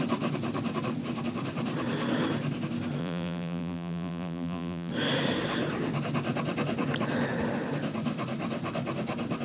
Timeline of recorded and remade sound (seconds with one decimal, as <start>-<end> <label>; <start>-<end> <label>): 0.0-3.0 recorded; 3.0-4.9 remade; 4.9-9.4 recorded